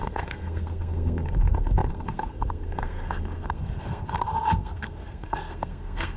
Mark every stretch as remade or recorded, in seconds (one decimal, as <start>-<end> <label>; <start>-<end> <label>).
0.0-6.2 remade